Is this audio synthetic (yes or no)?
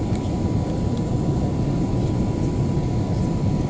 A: no